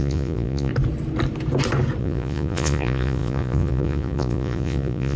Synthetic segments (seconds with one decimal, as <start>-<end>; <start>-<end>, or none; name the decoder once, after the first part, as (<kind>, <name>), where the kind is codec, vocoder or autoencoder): 0.0-0.7 (vocoder, Vocos); 2.0-5.2